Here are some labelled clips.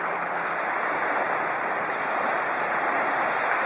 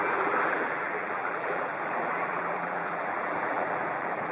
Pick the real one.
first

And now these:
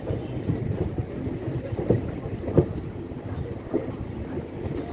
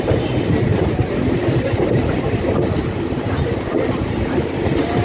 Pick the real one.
first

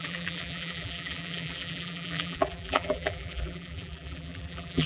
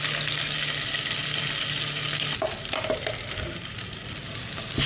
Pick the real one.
second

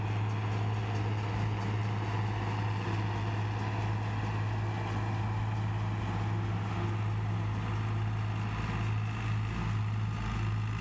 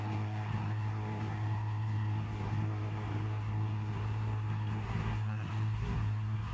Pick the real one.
first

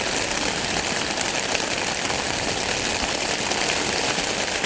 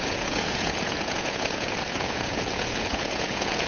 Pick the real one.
first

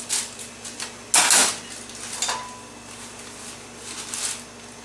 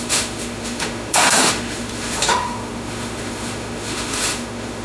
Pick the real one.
first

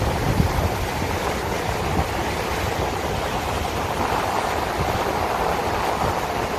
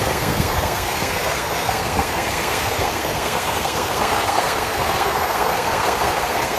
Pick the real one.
first